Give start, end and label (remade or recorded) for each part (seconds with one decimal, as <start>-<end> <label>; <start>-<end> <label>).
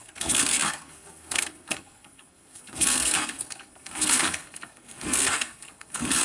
0.0-6.2 remade